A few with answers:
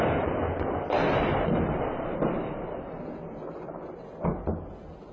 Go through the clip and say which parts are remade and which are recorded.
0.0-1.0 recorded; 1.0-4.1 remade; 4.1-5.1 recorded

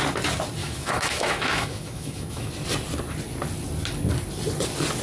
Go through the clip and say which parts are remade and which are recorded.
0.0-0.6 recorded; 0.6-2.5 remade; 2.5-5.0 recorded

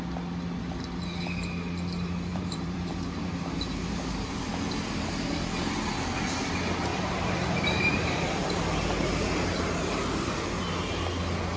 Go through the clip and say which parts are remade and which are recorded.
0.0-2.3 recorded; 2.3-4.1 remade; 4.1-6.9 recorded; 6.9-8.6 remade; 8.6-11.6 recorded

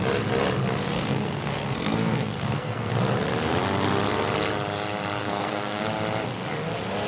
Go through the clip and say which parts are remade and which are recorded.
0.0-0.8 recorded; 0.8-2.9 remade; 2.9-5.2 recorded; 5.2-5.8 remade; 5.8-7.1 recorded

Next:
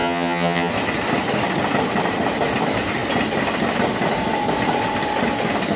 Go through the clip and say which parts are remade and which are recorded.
0.0-0.7 remade; 0.7-5.8 recorded

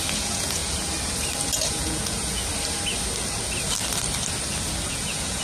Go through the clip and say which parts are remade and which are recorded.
0.0-0.6 remade; 0.6-1.7 recorded; 1.7-2.4 remade; 2.4-4.9 recorded; 4.9-5.4 remade

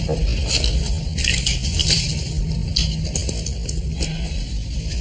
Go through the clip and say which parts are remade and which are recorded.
0.0-5.0 recorded

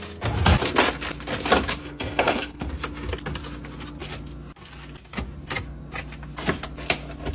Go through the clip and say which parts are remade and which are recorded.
0.0-1.8 recorded; 1.8-2.7 remade; 2.7-7.3 recorded